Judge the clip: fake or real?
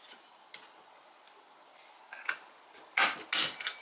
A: real